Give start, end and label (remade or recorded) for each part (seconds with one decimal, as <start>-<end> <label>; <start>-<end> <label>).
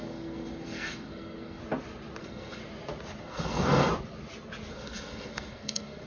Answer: 0.0-1.6 remade; 1.6-2.2 recorded; 2.2-2.6 remade; 2.6-3.2 recorded; 3.2-3.9 remade; 3.9-4.7 recorded; 4.7-6.1 remade